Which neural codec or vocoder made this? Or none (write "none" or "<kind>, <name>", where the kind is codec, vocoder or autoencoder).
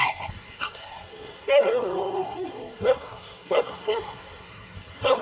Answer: codec, SNAC